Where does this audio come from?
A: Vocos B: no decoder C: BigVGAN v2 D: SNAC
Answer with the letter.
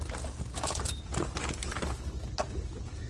B